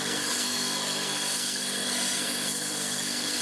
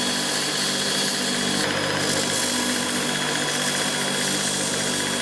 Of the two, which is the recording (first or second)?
second